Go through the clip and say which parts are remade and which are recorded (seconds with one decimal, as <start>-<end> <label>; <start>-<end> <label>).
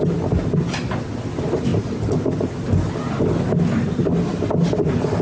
0.0-5.2 recorded